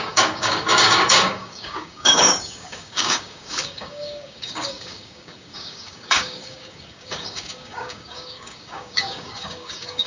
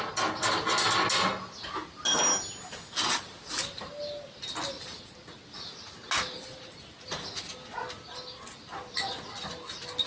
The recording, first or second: second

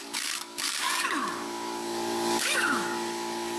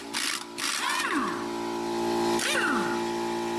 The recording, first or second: second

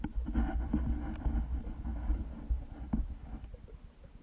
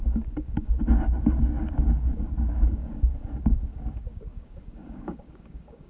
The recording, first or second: first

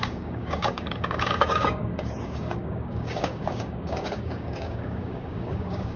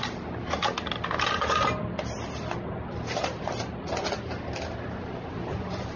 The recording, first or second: second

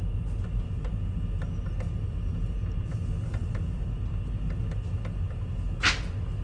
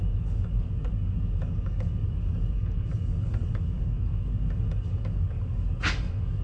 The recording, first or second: first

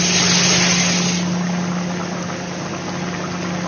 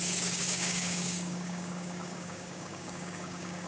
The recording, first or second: first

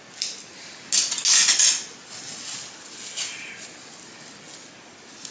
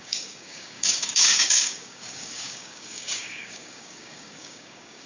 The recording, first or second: first